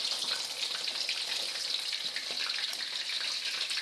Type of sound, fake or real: real